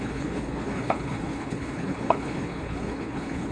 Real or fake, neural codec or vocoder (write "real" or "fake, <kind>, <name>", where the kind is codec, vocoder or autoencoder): fake, codec, HILCodec